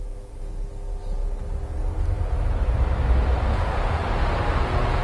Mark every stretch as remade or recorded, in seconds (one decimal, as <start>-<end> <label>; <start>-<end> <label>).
0.0-0.5 remade; 0.5-3.5 recorded; 3.5-4.0 remade; 4.0-4.6 recorded; 4.6-5.0 remade